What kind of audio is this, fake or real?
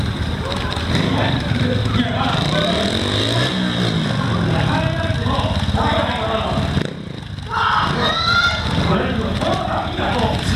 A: real